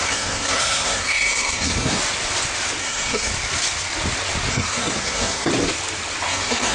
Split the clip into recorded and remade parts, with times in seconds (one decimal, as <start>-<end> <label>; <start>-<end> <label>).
0.0-2.0 remade; 2.0-2.8 recorded; 2.8-3.3 remade; 3.3-4.5 recorded; 4.5-5.5 remade; 5.5-6.3 recorded; 6.3-6.7 remade